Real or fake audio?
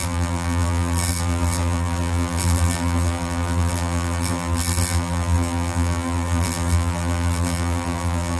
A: fake